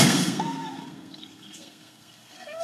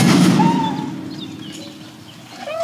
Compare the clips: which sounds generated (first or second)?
first